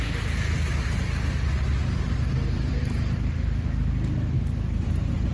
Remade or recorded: recorded